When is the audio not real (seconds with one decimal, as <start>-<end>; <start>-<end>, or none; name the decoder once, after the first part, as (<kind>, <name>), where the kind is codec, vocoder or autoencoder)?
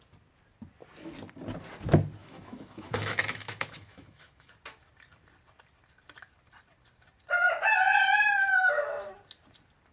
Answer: 2.2-4.5 (autoencoder, DAC-VAE); 8.5-9.1